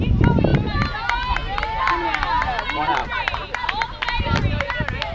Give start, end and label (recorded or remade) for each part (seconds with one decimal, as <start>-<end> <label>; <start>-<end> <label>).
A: 0.0-5.1 recorded